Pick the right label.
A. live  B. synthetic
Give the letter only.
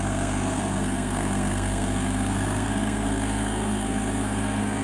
B